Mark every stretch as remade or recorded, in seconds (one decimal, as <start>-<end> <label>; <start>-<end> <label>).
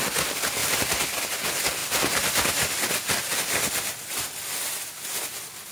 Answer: 0.0-5.7 recorded